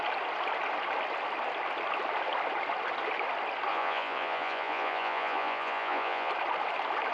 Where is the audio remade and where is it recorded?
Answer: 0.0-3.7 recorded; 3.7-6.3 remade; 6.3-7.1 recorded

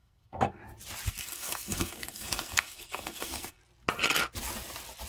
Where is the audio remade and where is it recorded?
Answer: 0.0-0.6 remade; 0.6-1.1 recorded; 1.1-3.6 remade; 3.6-5.1 recorded

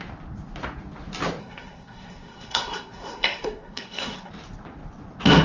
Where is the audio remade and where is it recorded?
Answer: 0.0-1.4 recorded; 1.4-4.3 remade; 4.3-5.4 recorded